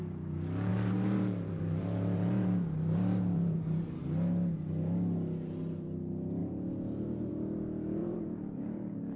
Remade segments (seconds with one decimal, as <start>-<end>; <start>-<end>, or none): 0.7-4.0; 6.4-7.3; 8.0-9.2